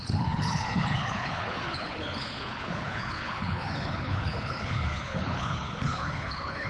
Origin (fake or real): fake